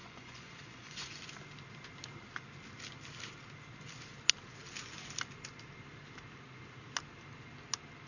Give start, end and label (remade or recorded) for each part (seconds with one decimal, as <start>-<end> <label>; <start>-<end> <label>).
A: 0.0-1.2 remade; 1.2-8.1 recorded